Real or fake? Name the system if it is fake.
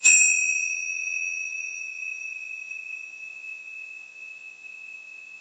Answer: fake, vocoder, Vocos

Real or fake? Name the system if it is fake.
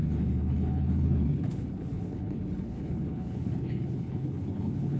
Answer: fake, codec, HILCodec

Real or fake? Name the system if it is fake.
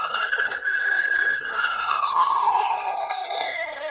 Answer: fake, codec, SNAC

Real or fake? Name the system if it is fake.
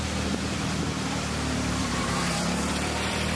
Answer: fake, vocoder, BigVGAN v2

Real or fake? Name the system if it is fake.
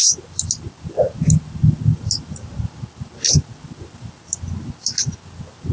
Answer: real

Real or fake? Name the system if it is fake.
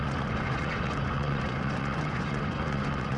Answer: fake, vocoder, Vocos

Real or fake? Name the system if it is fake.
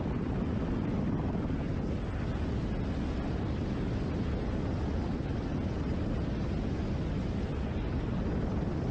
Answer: real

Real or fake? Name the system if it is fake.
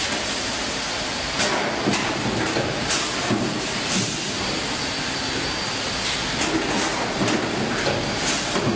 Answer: real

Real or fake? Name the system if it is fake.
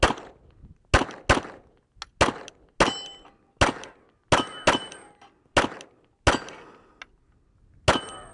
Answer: real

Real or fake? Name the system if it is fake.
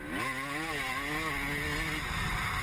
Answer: real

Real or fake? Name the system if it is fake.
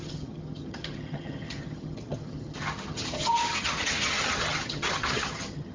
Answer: fake, vocoder, HiFi-GAN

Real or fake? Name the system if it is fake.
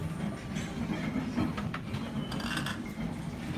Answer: real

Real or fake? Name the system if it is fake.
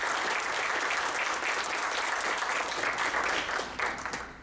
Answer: real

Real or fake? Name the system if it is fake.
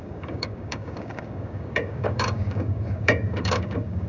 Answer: fake, codec, DAC